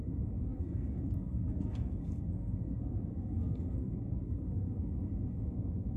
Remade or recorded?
remade